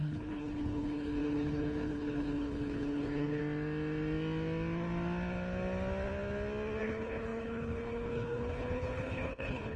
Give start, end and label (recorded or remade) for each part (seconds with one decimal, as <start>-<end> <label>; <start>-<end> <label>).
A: 0.0-3.4 remade; 3.4-6.8 recorded; 6.8-9.8 remade